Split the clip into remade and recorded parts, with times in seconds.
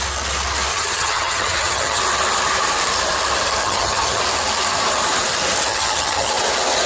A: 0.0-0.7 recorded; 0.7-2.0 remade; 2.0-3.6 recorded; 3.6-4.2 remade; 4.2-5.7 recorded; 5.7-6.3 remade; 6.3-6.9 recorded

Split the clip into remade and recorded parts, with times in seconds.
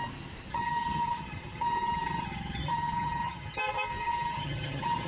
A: 0.0-0.5 recorded; 0.5-3.6 remade; 3.6-4.0 recorded; 4.0-5.1 remade